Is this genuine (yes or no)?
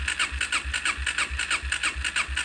yes